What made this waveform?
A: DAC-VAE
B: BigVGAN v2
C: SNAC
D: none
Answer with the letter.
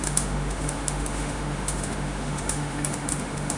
A